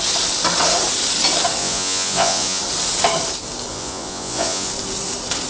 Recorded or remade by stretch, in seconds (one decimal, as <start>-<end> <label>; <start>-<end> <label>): 0.0-1.6 recorded; 1.6-2.6 remade; 2.6-3.7 recorded; 3.7-4.7 remade; 4.7-5.5 recorded